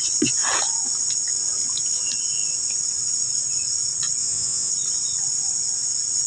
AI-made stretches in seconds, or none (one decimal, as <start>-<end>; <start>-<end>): 4.2-4.7